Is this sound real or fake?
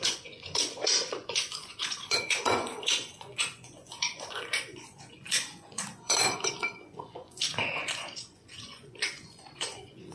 fake